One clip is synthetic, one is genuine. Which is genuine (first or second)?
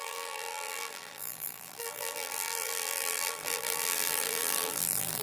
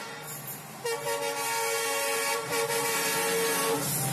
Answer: second